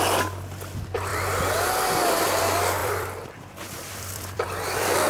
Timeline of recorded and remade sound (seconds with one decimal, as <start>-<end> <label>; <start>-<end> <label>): 0.0-1.1 recorded; 1.1-2.4 remade; 2.4-2.8 recorded; 2.8-5.1 remade